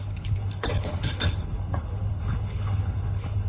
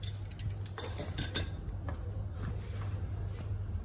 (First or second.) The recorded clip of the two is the second